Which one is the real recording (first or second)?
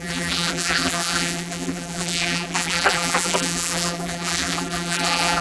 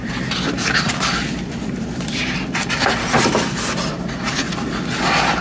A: second